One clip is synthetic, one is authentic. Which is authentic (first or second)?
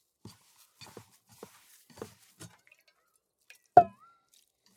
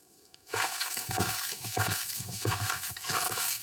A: first